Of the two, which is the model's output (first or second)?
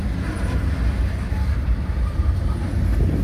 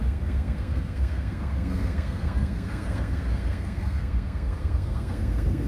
second